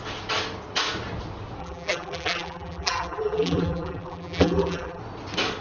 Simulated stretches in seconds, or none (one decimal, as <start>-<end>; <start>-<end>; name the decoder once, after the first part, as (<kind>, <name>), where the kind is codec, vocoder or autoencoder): 1.6-5.0 (vocoder, BigVGAN v2)